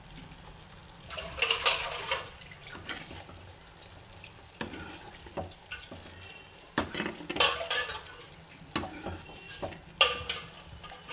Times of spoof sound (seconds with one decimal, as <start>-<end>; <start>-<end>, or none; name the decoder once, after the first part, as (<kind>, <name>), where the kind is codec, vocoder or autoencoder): none